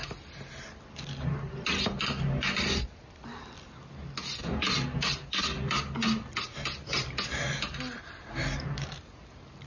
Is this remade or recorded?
recorded